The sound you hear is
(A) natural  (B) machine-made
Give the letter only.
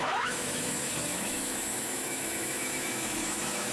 B